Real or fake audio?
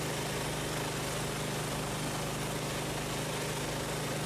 real